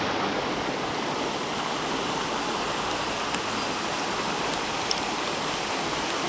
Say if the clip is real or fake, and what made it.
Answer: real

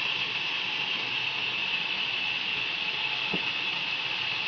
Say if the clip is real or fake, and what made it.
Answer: real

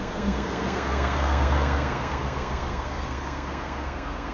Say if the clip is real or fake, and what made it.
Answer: fake, codec, SNAC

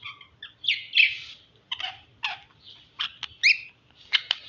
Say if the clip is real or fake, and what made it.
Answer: real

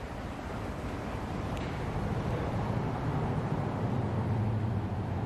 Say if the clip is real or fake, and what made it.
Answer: fake, vocoder, BigVGAN v2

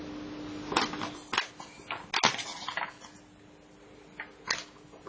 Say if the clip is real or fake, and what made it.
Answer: real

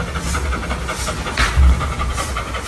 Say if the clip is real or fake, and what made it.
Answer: real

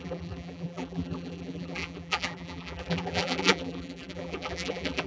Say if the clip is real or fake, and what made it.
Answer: fake, vocoder, BigVGAN v2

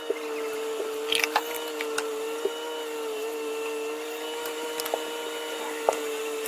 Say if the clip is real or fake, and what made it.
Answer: real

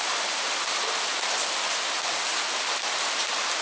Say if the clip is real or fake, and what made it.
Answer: real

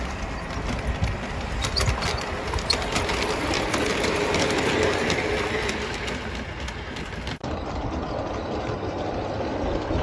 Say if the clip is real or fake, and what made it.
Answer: real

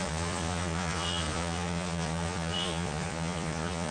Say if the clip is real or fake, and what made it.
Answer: fake, vocoder, Vocos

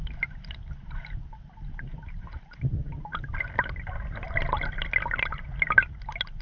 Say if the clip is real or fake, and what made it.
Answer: real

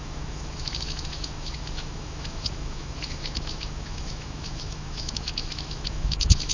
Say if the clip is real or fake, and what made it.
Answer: fake, autoencoder, DAC-VAE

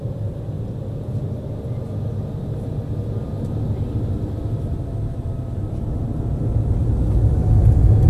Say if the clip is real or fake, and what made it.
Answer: real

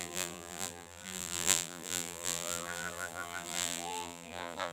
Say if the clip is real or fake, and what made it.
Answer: fake, vocoder, BigVGAN v2